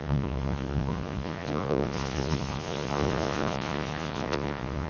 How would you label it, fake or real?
fake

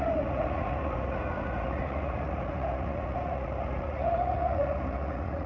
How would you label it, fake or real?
fake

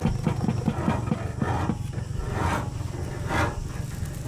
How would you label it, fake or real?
real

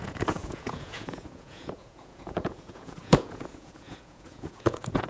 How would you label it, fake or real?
fake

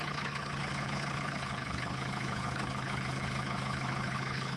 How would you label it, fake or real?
fake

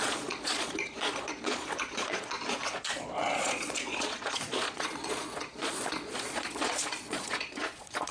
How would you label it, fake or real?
fake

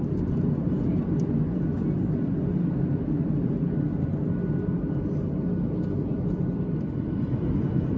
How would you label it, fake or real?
real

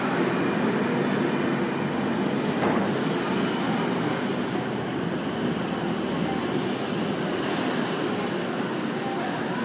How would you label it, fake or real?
real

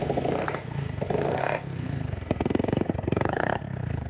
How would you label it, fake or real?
fake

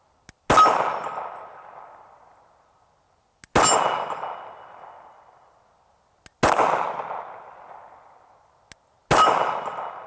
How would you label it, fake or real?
real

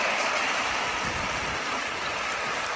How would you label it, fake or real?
real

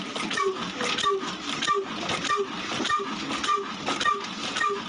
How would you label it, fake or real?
real